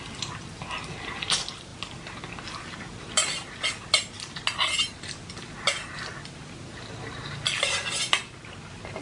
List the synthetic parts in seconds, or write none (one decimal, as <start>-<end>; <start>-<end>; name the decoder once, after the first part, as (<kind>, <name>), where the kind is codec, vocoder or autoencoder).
3.2-3.7 (vocoder, BigVGAN v2)